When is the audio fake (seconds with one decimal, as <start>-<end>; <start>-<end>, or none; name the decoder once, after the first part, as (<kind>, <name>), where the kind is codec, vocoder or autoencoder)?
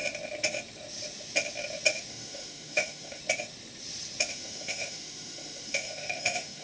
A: 2.1-3.2 (autoencoder, DAC-VAE); 4.3-6.6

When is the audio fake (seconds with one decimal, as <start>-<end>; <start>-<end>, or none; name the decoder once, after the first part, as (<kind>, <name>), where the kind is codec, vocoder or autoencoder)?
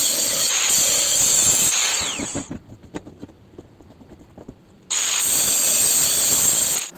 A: none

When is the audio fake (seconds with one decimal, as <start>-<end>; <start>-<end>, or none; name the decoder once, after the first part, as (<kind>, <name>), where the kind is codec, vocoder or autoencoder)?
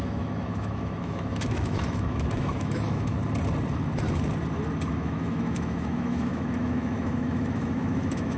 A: 0.0-3.2 (autoencoder, DAC-VAE); 4.9-8.4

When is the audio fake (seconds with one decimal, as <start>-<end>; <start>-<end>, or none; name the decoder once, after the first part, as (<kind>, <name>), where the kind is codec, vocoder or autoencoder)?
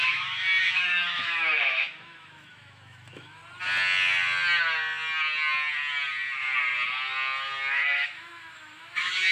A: 0.0-3.4 (autoencoder, DAC-VAE); 7.7-9.3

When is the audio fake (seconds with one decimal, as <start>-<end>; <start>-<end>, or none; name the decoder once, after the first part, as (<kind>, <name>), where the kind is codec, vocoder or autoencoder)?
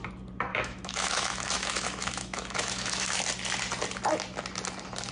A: 0.5-3.2 (autoencoder, DAC-VAE)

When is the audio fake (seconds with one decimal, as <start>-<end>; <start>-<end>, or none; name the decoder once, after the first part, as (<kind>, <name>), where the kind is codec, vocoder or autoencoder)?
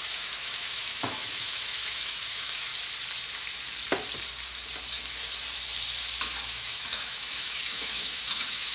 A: 0.0-2.7 (autoencoder, DAC-VAE); 6.5-8.7